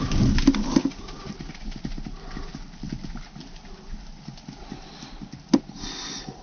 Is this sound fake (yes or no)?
no